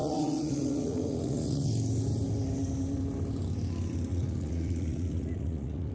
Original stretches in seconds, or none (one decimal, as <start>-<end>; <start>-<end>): 1.7-4.1